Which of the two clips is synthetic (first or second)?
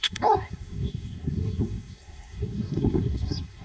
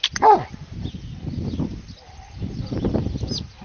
first